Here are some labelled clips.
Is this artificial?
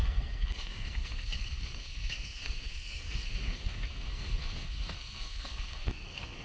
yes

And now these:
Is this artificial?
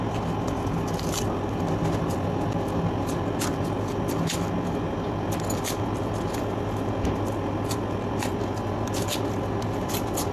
no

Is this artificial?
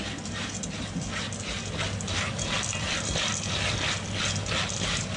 no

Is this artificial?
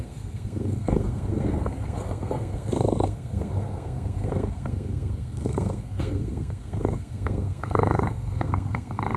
yes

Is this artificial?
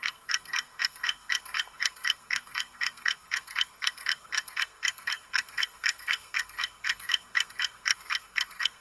yes